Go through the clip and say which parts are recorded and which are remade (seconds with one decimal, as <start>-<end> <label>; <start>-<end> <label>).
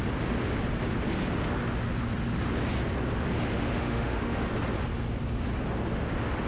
0.0-3.5 recorded; 3.5-4.5 remade; 4.5-6.5 recorded